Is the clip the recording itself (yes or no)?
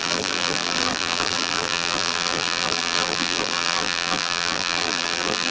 no